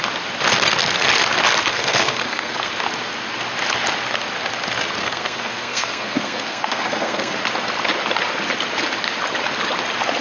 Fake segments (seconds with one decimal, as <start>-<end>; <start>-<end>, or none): 1.7-2.7; 5.0-7.3